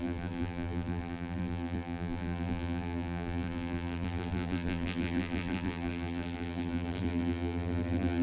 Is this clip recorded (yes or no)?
no